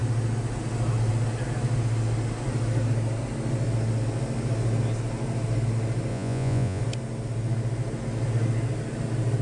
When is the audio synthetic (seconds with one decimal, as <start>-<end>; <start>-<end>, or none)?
6.1-6.8